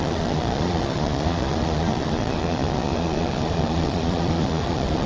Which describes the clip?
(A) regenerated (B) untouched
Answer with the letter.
A